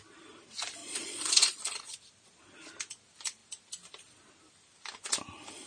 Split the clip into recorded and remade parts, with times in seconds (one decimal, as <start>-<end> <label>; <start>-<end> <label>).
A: 0.0-0.8 recorded; 0.8-2.0 remade; 2.0-5.7 recorded